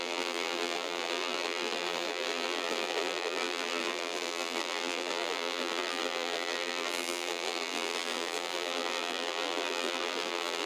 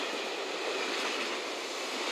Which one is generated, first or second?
first